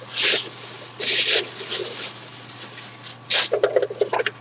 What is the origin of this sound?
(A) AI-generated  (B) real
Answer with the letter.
B